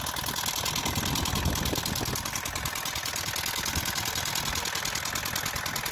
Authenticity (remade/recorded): recorded